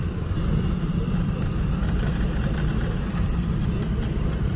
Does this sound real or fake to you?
fake